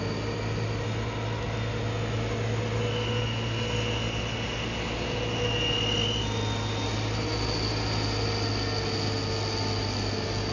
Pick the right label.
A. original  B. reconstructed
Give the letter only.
A